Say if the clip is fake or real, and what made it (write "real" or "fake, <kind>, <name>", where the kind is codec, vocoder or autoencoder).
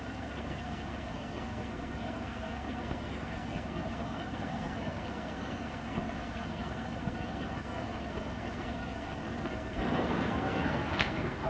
fake, codec, SNAC